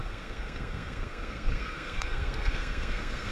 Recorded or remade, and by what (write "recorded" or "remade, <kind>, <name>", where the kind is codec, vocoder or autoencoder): remade, codec, SNAC